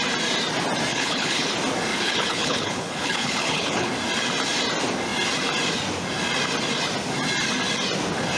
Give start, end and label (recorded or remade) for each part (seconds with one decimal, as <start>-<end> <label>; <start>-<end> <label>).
0.0-0.9 recorded; 0.9-1.5 remade; 1.5-1.9 recorded; 1.9-3.9 remade; 3.9-8.4 recorded